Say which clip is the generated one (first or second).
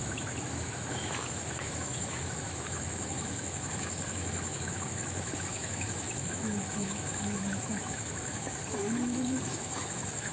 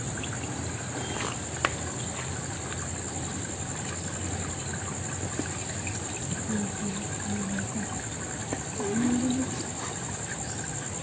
first